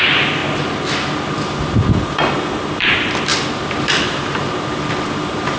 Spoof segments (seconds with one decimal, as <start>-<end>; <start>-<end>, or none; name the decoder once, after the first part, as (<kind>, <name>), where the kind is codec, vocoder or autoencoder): 0.0-0.4 (vocoder, BigVGAN v2); 2.0-3.3; 3.8-5.6